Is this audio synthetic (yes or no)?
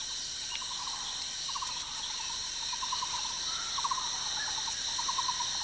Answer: no